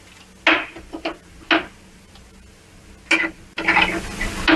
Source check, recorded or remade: recorded